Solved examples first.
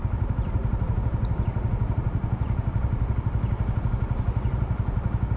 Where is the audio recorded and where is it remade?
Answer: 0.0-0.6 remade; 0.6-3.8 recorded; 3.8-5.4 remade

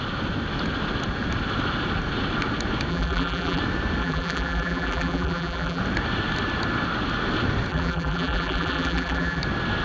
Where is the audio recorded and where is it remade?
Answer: 0.0-2.9 recorded; 2.9-3.6 remade; 3.6-4.0 recorded; 4.0-5.8 remade; 5.8-7.7 recorded; 7.7-9.4 remade; 9.4-9.8 recorded

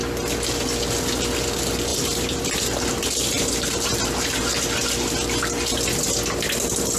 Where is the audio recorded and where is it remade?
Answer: 0.0-1.9 recorded; 1.9-4.4 remade; 4.4-7.0 recorded

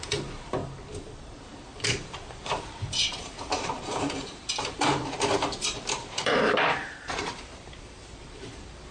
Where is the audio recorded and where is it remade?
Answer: 0.0-0.6 remade; 0.6-1.4 recorded; 1.4-8.9 remade